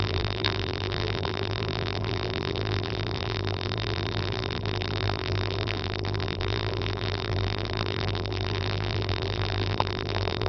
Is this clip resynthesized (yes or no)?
yes